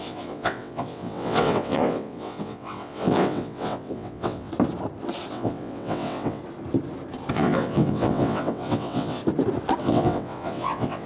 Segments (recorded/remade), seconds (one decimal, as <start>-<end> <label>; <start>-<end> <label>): 0.0-4.5 remade; 4.5-5.3 recorded; 5.3-6.4 remade; 6.4-7.3 recorded; 7.3-9.2 remade; 9.2-9.8 recorded; 9.8-11.1 remade